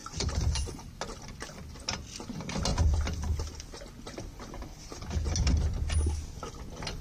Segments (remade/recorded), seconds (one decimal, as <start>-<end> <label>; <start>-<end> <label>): 0.0-0.9 remade; 0.9-7.0 recorded